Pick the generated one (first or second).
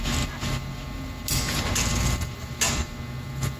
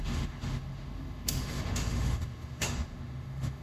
second